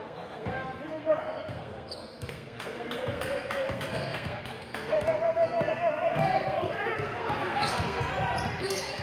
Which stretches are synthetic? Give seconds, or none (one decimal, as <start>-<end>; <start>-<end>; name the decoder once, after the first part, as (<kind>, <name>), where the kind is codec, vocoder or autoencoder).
0.0-8.1 (codec, SNAC); 8.6-9.0